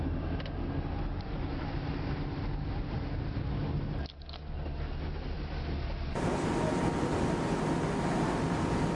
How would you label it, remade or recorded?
recorded